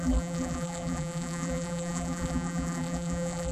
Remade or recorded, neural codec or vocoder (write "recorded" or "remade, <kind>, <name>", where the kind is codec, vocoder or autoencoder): remade, vocoder, BigVGAN v2